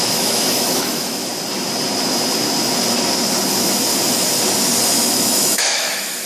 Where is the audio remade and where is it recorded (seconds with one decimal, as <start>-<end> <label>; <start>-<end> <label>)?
0.0-1.3 remade; 1.3-5.1 recorded; 5.1-6.3 remade